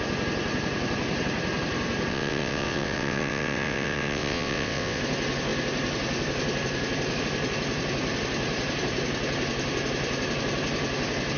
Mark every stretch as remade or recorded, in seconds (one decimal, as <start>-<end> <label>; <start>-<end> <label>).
0.0-2.1 recorded; 2.1-5.0 remade; 5.0-11.4 recorded